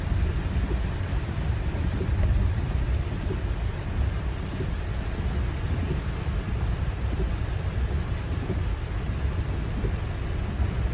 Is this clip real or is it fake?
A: real